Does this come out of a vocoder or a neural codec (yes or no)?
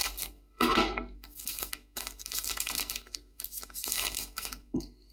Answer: yes